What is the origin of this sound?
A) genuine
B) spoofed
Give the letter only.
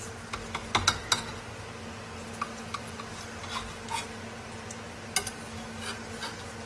A